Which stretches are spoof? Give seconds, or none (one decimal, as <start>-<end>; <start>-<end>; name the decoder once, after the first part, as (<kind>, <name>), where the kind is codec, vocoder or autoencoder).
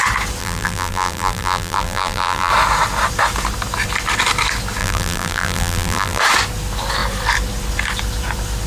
0.4-2.5 (vocoder, BigVGAN v2); 4.8-6.2